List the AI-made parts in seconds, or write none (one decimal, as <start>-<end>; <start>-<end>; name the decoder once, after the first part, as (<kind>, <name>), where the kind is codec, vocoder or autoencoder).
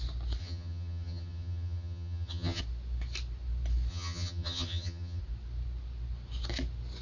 0.4-2.6 (vocoder, HiFi-GAN); 3.9-5.2